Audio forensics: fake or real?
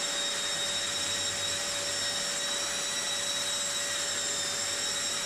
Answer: real